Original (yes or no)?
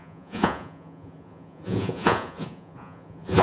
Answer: no